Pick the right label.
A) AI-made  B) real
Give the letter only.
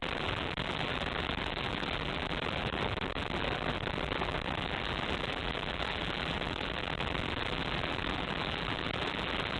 A